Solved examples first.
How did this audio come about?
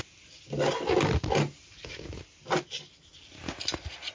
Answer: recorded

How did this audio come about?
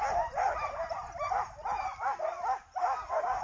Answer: recorded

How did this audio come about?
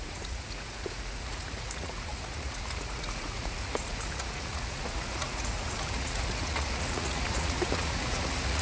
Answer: remade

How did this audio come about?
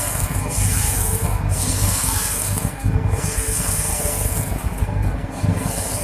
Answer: remade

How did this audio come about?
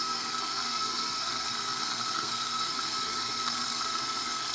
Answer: remade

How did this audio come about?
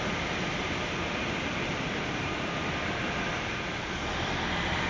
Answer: remade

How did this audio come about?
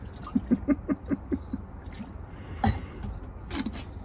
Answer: recorded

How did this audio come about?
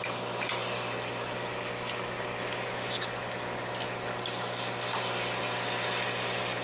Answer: recorded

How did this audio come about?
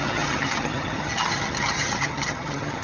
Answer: remade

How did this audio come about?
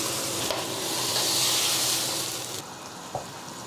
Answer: recorded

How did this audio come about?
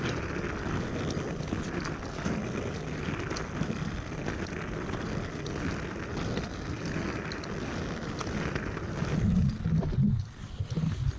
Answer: recorded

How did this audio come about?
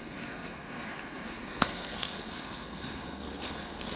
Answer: remade